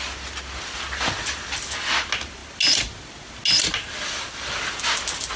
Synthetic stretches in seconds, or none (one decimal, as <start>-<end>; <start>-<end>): none